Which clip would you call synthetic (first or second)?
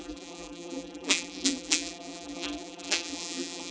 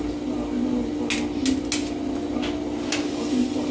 first